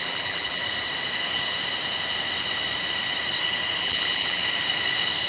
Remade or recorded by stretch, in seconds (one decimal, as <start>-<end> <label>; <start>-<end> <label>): 0.0-0.6 remade; 0.6-3.8 recorded; 3.8-4.4 remade; 4.4-5.3 recorded